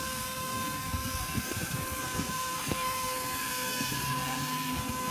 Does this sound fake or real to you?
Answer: fake